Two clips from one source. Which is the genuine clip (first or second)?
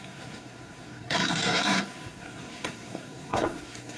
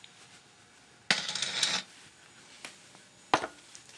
second